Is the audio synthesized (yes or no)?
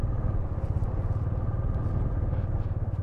no